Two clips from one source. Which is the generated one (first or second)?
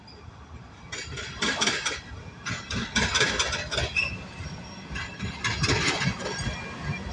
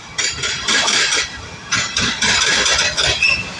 second